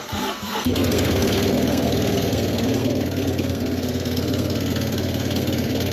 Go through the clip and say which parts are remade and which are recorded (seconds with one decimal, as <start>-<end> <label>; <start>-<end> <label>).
0.0-5.9 remade